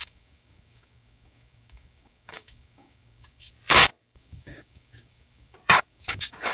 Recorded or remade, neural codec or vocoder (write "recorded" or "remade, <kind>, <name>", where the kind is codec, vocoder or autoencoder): remade, codec, DAC